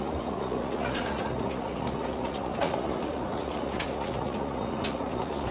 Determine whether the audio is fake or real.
fake